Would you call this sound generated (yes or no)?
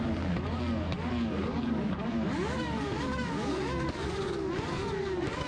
yes